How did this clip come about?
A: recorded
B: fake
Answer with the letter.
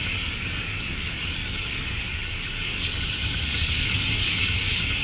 B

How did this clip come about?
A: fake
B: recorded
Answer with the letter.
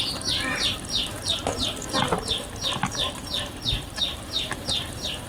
B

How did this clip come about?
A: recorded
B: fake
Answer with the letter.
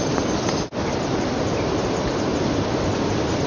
A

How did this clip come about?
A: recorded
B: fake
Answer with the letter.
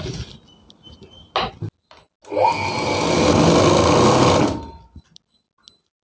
A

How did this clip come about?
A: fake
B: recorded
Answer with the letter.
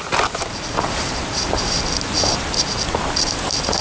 B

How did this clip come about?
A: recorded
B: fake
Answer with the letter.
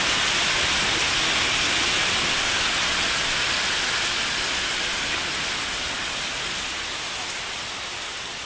A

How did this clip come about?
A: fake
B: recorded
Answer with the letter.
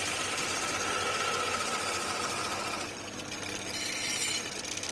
B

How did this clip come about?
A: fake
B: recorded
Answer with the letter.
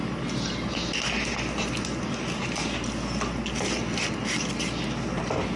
B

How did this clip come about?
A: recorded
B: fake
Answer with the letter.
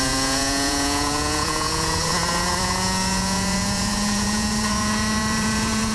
B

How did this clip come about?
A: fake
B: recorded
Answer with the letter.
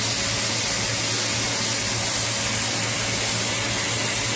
B